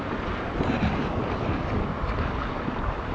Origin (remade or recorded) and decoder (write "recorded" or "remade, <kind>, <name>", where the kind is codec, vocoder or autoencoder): recorded